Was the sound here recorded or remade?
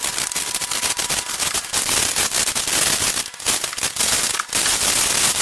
recorded